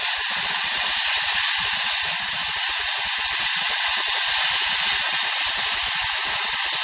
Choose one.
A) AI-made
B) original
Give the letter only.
B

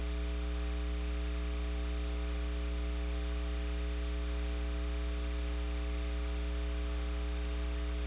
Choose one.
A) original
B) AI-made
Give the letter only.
A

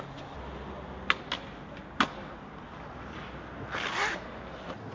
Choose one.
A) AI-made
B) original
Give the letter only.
B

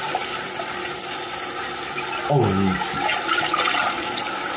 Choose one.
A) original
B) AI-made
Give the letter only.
A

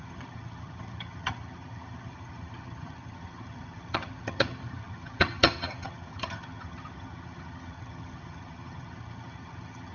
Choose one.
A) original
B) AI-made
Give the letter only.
B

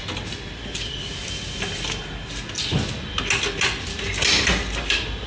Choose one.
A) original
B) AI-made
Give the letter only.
A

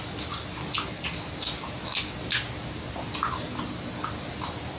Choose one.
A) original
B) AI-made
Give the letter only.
A